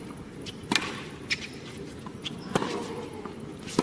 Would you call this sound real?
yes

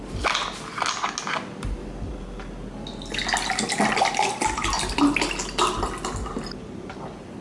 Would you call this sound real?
yes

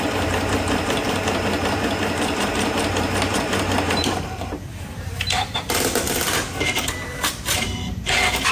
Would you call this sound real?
no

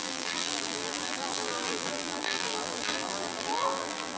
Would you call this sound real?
no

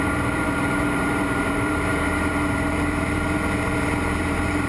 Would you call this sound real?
no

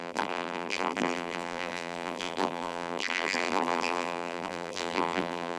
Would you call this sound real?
no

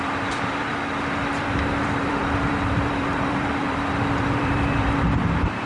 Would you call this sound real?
no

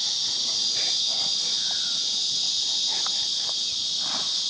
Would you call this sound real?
yes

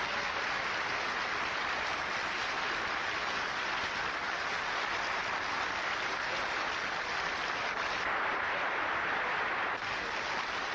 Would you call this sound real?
yes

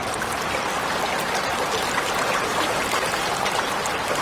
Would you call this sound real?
no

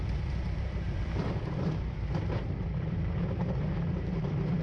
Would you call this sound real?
no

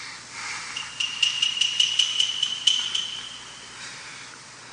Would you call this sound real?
no